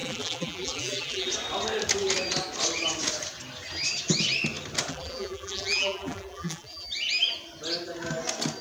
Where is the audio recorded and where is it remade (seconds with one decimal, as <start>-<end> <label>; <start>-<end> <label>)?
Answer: 0.0-1.3 remade; 1.3-4.9 recorded; 4.9-6.9 remade; 6.9-8.6 recorded